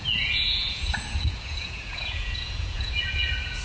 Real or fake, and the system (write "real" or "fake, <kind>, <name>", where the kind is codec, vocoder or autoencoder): fake, vocoder, Vocos